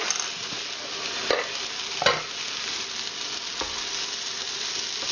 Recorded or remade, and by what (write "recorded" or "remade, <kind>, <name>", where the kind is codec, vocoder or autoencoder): recorded